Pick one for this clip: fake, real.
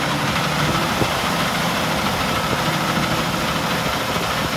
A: fake